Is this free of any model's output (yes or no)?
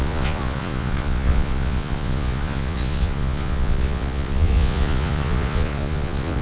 no